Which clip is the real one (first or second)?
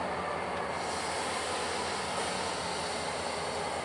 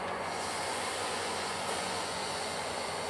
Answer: first